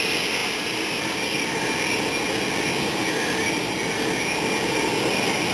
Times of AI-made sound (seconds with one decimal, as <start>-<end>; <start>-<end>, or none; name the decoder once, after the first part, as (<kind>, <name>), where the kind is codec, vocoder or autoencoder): none